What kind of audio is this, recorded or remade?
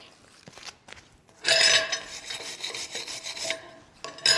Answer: recorded